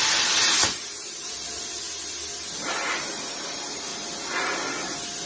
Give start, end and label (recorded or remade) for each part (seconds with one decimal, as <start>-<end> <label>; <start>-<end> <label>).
0.0-2.6 recorded; 2.6-3.9 remade; 3.9-5.3 recorded